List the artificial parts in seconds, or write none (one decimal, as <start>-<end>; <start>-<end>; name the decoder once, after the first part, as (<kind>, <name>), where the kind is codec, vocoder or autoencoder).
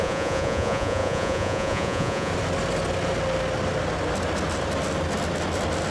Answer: 0.0-2.3 (vocoder, Vocos)